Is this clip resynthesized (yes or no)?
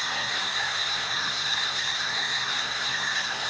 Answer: yes